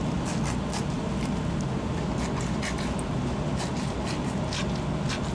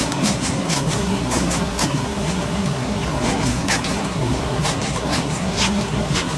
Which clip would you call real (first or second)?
first